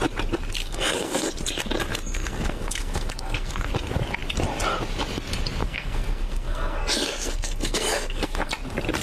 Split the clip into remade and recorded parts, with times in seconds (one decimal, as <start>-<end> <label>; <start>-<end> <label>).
0.0-0.6 recorded; 0.6-1.3 remade; 1.3-1.9 recorded; 1.9-3.7 remade; 3.7-5.6 recorded; 5.6-8.5 remade; 8.5-9.0 recorded